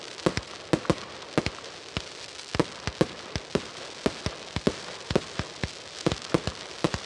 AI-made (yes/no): no